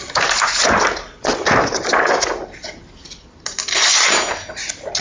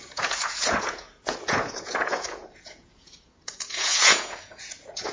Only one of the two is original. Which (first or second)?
first